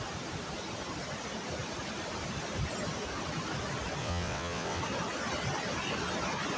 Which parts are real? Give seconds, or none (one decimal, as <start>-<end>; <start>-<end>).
0.0-4.0; 4.8-6.6